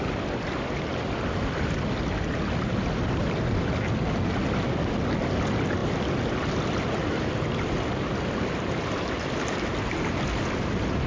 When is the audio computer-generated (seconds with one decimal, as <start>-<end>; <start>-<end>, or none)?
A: none